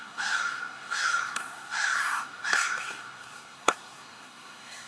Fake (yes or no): yes